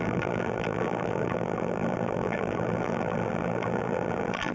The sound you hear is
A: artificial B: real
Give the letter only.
A